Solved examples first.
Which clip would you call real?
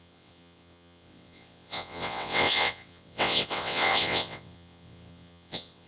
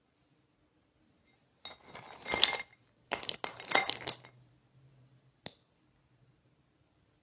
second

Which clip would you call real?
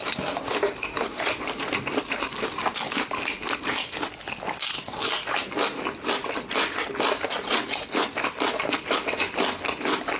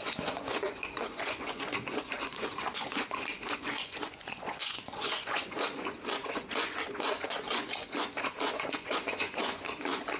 first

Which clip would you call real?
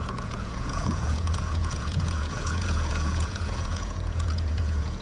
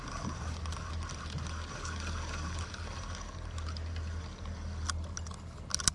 second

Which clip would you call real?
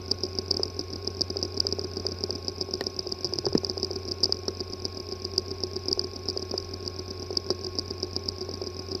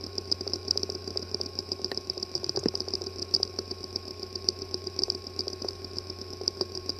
first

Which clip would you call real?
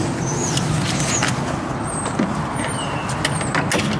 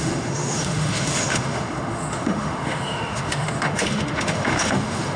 first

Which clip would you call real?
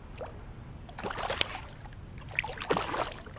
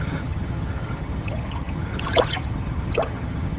first